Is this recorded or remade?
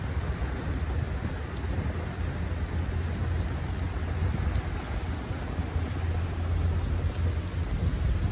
recorded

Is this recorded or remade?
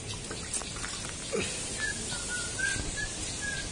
recorded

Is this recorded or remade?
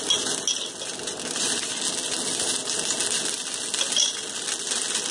recorded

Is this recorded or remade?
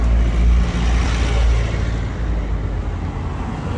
recorded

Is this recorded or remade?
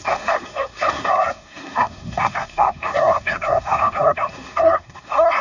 remade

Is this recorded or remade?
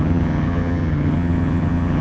remade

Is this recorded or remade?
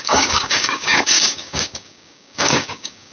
remade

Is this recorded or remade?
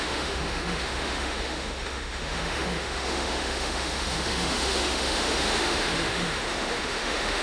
remade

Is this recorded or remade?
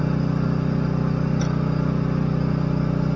recorded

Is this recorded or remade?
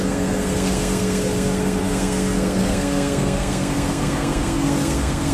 remade